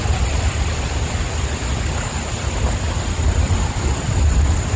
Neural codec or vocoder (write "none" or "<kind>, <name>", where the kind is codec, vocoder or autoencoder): none